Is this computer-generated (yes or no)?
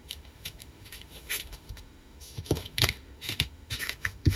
yes